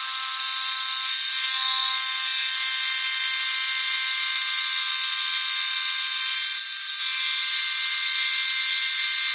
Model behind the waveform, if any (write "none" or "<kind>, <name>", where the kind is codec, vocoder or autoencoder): none